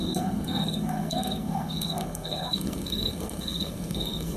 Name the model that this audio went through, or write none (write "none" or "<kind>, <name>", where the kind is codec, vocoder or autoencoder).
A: codec, SNAC